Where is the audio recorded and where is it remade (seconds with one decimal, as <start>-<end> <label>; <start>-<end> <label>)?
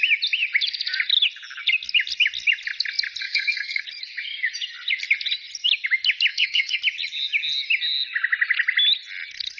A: 0.0-3.2 recorded; 3.2-3.8 remade; 3.8-6.3 recorded; 6.3-6.8 remade; 6.8-9.6 recorded